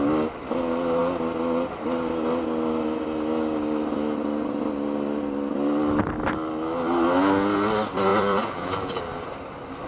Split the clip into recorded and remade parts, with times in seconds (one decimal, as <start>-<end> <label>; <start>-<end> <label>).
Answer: 0.0-8.1 recorded; 8.1-9.0 remade; 9.0-9.9 recorded